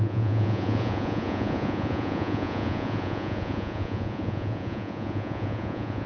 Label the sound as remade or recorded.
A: remade